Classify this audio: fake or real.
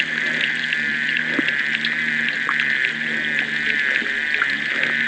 real